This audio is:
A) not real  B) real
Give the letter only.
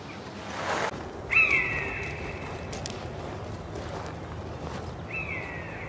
B